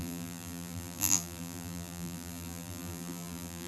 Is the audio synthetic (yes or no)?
yes